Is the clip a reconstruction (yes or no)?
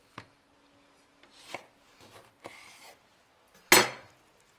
no